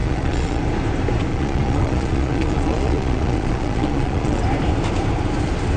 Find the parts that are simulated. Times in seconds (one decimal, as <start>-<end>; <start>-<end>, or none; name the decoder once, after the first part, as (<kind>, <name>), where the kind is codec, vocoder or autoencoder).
0.0-0.6 (vocoder, Vocos); 1.3-4.4